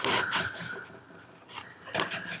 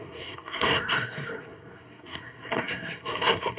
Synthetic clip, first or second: second